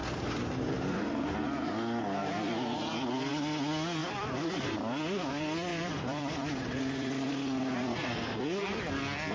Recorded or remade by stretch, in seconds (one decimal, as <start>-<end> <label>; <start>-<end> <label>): 0.0-2.2 recorded; 2.2-3.3 remade; 3.3-4.0 recorded; 4.0-5.3 remade; 5.3-5.7 recorded; 5.7-8.4 remade; 8.4-9.3 recorded

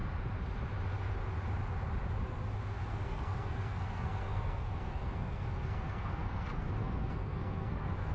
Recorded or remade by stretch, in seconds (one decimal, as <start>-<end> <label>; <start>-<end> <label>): 0.0-2.9 recorded; 2.9-8.1 remade

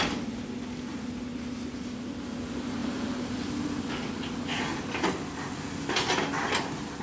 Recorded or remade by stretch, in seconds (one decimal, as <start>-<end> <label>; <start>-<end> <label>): 0.0-2.8 recorded; 2.8-3.9 remade; 3.9-7.0 recorded

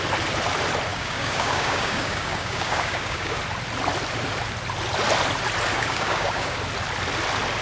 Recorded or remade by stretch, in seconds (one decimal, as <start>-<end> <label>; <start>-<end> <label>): 0.0-0.9 recorded; 0.9-3.4 remade; 3.4-5.7 recorded; 5.7-6.6 remade; 6.6-7.6 recorded

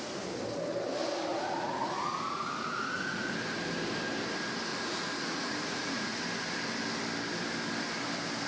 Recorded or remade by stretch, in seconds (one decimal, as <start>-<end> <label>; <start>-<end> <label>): 0.0-1.3 recorded; 1.3-3.3 remade; 3.3-4.7 recorded; 4.7-6.2 remade; 6.2-8.5 recorded

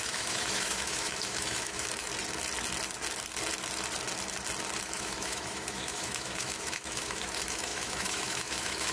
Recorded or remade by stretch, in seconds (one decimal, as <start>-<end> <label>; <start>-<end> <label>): 0.0-2.1 remade; 2.1-4.8 recorded; 4.8-8.9 remade

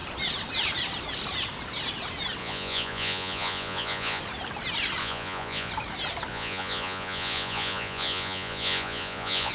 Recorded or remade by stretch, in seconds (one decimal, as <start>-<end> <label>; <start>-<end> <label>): 0.0-2.4 recorded; 2.4-4.2 remade; 4.2-5.0 recorded; 5.0-5.7 remade; 5.7-6.3 recorded; 6.3-9.5 remade

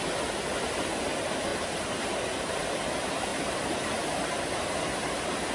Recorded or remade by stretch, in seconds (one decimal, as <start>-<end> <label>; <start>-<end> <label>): 0.0-1.5 recorded; 1.5-2.2 remade; 2.2-3.3 recorded; 3.3-5.5 remade